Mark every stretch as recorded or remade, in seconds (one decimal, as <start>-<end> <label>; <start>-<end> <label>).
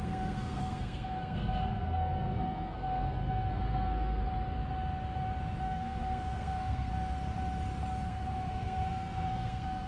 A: 0.0-4.2 remade; 4.2-5.6 recorded; 5.6-6.9 remade; 6.9-8.1 recorded; 8.1-9.9 remade